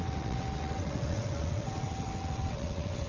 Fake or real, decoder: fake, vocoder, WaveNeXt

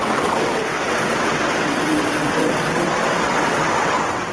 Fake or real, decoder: fake, vocoder, WaveNeXt